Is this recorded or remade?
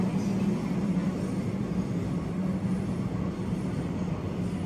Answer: recorded